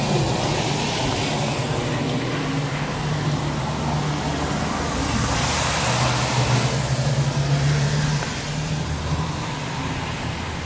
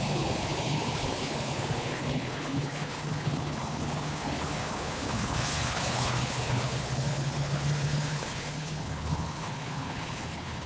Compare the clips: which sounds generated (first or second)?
second